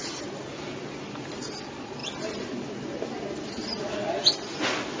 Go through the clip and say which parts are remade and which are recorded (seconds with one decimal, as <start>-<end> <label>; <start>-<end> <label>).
0.0-5.0 recorded